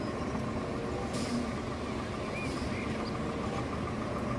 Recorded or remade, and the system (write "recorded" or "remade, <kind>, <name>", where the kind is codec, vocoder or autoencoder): recorded